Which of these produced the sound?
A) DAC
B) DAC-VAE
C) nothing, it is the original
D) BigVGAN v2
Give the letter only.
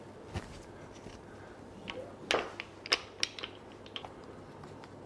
C